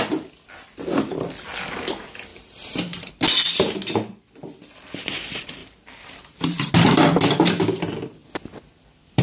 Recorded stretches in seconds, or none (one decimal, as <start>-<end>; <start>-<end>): 0.0-2.3; 3.1-5.6; 6.7-9.2